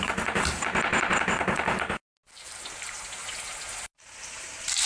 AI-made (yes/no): yes